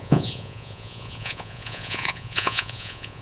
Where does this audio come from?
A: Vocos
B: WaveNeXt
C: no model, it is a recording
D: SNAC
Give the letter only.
A